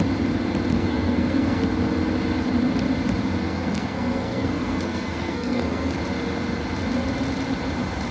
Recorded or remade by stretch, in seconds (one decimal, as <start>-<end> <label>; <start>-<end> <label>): 0.0-0.7 recorded; 0.7-1.6 remade; 1.6-3.4 recorded; 3.4-6.0 remade; 6.0-8.1 recorded